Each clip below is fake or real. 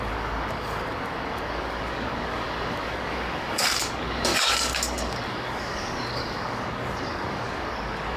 fake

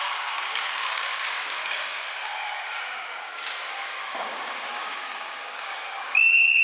fake